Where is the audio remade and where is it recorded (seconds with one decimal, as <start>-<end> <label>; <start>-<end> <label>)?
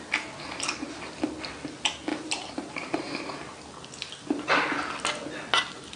0.0-2.1 recorded; 2.1-3.0 remade; 3.0-6.0 recorded